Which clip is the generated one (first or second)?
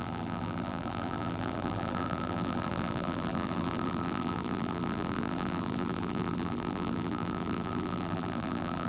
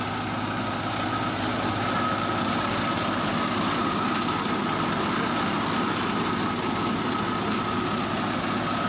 first